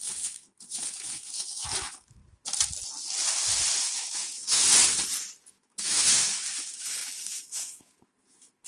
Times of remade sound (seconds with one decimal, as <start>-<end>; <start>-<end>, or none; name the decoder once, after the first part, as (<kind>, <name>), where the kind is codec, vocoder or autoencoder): 0.0-2.2 (autoencoder, DAC-VAE); 3.8-4.6; 5.5-8.7